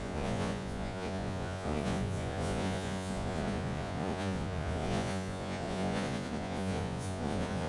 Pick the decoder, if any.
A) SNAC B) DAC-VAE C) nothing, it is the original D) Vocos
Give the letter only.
D